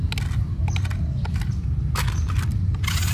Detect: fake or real real